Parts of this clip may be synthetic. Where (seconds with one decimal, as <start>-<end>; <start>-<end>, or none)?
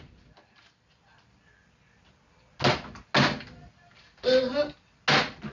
none